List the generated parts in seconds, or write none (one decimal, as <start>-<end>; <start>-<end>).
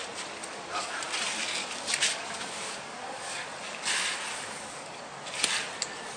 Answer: 0.4-1.0; 1.6-3.5; 4.3-5.0